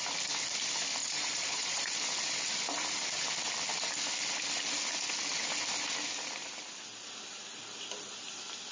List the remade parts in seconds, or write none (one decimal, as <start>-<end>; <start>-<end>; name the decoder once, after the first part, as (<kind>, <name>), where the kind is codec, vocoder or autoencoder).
1.0-1.9 (vocoder, Vocos)